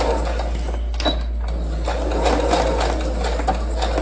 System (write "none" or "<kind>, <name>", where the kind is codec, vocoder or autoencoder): none